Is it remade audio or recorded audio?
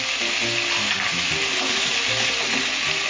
recorded